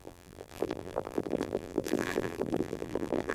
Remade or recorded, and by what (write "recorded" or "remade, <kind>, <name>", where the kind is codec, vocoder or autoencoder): remade, vocoder, BigVGAN v2